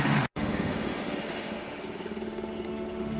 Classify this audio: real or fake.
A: fake